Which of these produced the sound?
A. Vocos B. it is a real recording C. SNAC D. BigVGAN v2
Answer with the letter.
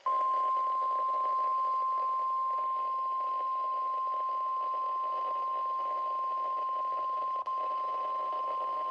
B